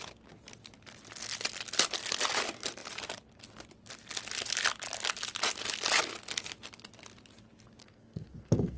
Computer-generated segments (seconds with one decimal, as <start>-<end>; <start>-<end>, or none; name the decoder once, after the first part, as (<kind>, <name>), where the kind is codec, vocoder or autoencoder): 7.8-8.8 (codec, SNAC)